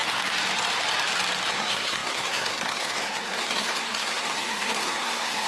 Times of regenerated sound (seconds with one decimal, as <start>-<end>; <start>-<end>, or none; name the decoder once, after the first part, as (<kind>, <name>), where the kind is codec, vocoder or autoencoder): 1.5-5.5 (codec, SNAC)